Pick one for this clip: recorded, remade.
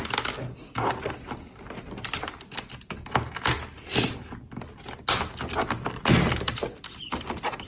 recorded